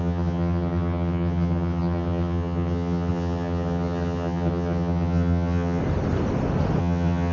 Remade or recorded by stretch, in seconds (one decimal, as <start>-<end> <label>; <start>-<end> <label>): 0.0-5.8 remade; 5.8-6.8 recorded; 6.8-7.3 remade